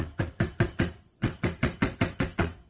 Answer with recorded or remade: remade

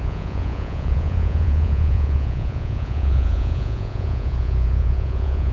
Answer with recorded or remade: remade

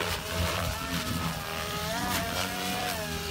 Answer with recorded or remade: remade